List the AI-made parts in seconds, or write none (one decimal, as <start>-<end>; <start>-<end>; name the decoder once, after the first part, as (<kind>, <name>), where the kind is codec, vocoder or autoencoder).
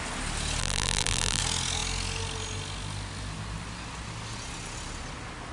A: 0.6-1.4 (vocoder, BigVGAN v2)